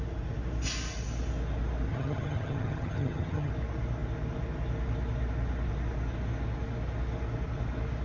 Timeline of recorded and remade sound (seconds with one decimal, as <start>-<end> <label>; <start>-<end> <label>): 0.0-1.9 recorded; 1.9-3.5 remade; 3.5-8.0 recorded